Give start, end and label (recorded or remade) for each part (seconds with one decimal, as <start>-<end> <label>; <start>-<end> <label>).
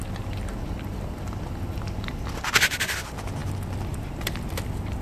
0.0-3.4 recorded; 3.4-4.3 remade; 4.3-5.0 recorded